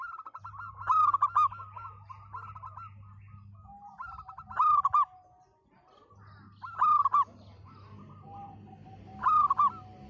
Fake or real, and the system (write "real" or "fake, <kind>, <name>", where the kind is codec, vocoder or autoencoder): real